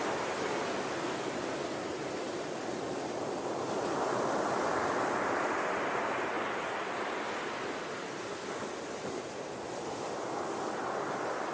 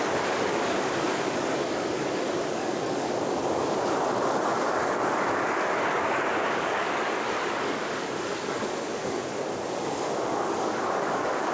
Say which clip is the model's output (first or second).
second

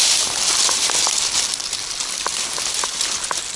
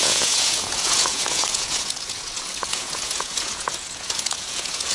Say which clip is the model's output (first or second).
second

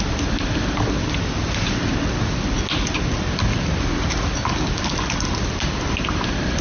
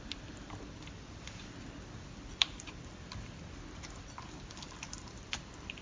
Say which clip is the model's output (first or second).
second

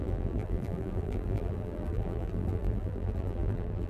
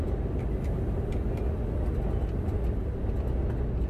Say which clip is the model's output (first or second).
first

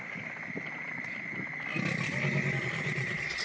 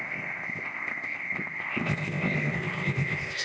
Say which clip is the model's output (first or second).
second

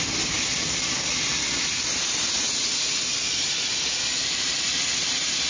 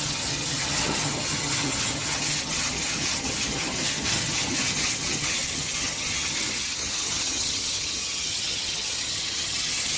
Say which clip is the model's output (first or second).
second